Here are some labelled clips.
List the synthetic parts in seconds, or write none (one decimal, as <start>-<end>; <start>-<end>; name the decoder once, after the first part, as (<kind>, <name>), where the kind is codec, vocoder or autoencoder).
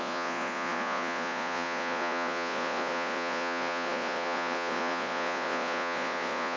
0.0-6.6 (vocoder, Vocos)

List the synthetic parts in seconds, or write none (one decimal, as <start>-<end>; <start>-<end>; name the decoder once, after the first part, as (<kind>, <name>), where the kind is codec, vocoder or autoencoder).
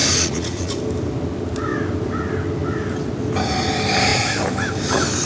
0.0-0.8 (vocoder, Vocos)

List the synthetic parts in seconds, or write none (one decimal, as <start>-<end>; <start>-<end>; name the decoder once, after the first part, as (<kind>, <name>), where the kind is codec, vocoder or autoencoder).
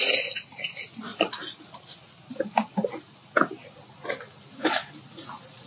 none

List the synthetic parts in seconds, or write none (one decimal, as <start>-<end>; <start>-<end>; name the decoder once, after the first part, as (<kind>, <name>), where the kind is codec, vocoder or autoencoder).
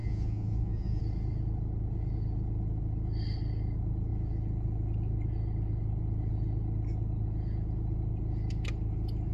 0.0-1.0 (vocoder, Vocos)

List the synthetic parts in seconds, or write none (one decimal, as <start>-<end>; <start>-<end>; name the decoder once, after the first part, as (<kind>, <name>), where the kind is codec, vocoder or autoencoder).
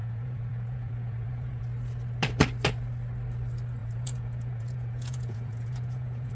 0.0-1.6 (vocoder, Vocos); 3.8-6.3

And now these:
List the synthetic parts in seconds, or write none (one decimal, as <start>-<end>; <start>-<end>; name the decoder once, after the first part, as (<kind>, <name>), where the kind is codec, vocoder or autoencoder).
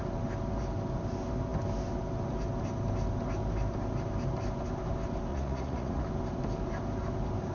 5.3-6.0 (vocoder, Vocos)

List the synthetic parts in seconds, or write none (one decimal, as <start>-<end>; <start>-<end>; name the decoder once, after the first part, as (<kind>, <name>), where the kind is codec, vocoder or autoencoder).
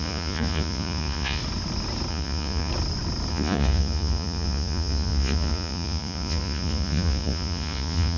0.0-1.4 (vocoder, Vocos); 2.1-2.7; 3.3-8.2